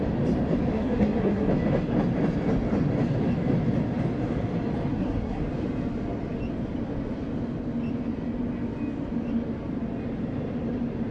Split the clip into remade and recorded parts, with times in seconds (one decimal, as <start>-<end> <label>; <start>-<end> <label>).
0.0-0.7 recorded; 0.7-1.5 remade; 1.5-4.9 recorded; 4.9-5.4 remade; 5.4-11.1 recorded